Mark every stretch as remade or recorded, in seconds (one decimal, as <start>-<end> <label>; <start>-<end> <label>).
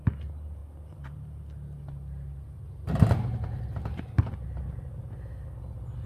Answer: 0.0-6.1 recorded